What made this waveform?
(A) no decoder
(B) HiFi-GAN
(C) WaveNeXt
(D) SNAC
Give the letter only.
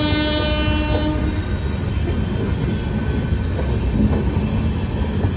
A